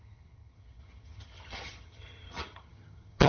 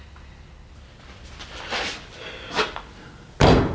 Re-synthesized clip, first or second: first